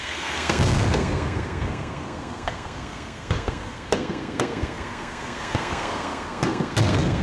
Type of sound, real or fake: fake